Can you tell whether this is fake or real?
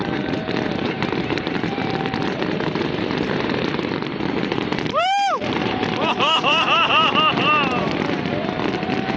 fake